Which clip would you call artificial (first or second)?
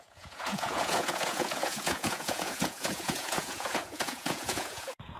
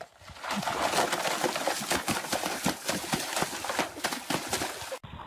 first